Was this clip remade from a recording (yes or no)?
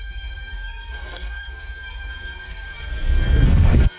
yes